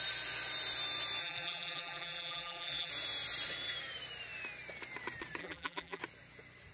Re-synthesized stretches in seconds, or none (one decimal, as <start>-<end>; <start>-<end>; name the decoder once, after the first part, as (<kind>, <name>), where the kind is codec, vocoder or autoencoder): 1.2-2.9 (vocoder, BigVGAN v2); 5.4-6.0